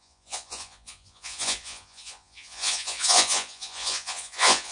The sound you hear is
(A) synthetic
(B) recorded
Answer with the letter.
A